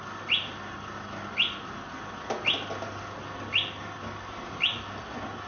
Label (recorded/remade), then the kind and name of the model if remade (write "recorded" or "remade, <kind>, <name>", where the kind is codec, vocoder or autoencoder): recorded